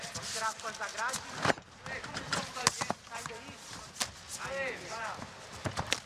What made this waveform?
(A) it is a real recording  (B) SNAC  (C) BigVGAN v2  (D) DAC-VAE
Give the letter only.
A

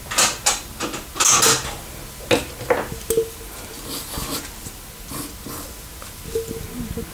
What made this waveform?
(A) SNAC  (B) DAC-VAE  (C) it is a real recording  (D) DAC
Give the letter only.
C